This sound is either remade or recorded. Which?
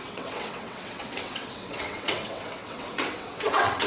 remade